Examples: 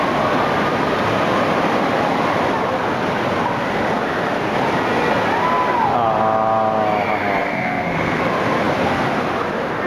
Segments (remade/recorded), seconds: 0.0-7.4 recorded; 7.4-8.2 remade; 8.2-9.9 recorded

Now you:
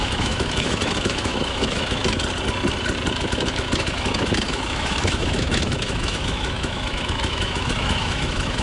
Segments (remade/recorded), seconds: 0.0-2.0 remade; 2.0-3.1 recorded; 3.1-8.6 remade

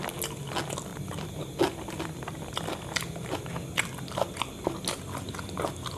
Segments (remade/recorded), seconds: 0.0-0.9 recorded; 0.9-1.5 remade; 1.5-6.0 recorded

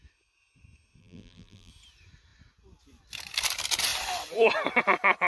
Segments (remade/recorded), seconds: 0.0-1.0 recorded; 1.0-1.7 remade; 1.7-5.3 recorded

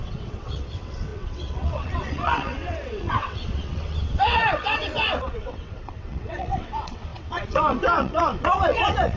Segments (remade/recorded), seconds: 0.0-9.2 remade

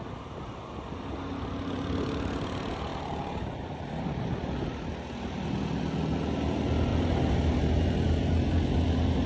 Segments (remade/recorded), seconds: 0.0-2.9 recorded; 2.9-4.3 remade; 4.3-6.9 recorded; 6.9-7.5 remade; 7.5-9.3 recorded

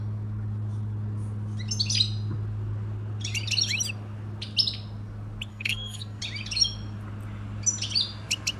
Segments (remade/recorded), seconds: 0.0-5.5 recorded; 5.5-6.2 remade; 6.2-8.6 recorded

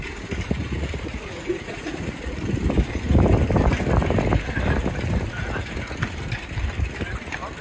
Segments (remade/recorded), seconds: 0.0-0.6 recorded; 0.6-2.4 remade; 2.4-7.6 recorded